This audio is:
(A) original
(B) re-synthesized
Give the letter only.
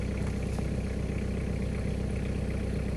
A